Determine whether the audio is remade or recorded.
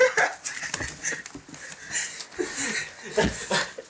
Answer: recorded